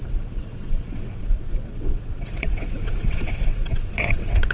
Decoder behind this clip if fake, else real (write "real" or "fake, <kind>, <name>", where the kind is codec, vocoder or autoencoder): fake, vocoder, WaveNeXt